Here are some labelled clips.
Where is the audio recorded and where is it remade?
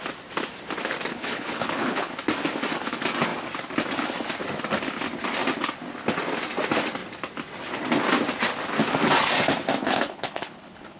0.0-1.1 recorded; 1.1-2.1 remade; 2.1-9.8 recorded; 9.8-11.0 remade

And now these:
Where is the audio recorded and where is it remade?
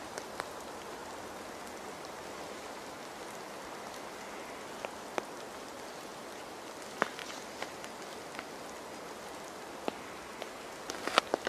0.0-11.5 recorded